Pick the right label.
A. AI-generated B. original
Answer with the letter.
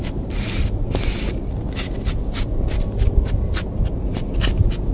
B